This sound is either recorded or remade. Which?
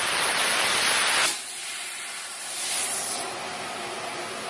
recorded